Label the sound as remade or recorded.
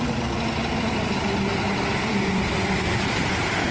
recorded